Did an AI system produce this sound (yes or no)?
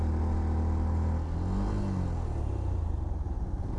no